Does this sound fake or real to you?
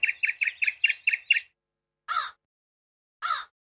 real